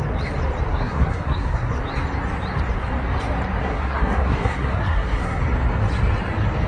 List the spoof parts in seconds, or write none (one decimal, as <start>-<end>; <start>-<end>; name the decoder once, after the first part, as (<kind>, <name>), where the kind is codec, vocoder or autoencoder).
0.7-1.7 (codec, SNAC); 3.6-5.4